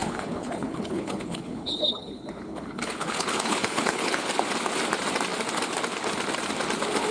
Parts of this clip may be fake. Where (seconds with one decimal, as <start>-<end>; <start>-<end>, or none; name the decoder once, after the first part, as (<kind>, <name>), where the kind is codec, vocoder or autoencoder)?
0.0-4.3 (codec, HILCodec)